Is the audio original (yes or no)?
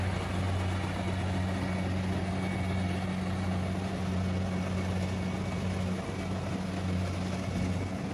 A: yes